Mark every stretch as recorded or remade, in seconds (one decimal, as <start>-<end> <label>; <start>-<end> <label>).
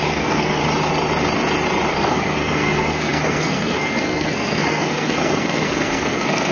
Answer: 0.0-0.6 remade; 0.6-1.9 recorded; 1.9-6.5 remade